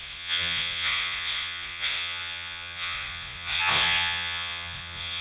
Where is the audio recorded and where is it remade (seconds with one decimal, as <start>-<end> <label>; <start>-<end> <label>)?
0.0-5.2 remade